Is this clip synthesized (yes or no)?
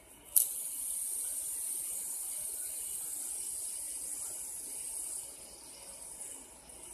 no